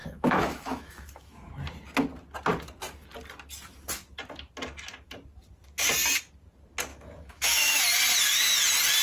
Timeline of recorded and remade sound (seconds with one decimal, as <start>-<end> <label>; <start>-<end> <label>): 0.0-1.5 remade; 1.5-6.9 recorded; 6.9-7.8 remade; 7.8-9.0 recorded